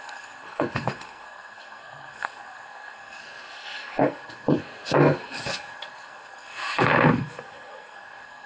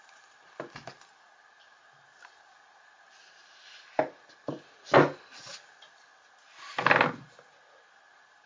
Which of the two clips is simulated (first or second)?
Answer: first